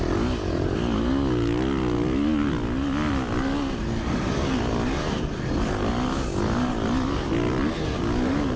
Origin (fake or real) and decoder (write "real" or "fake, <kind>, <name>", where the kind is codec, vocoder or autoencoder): real